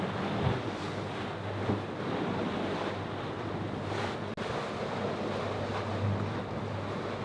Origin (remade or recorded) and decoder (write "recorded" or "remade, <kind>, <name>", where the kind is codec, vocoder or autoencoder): recorded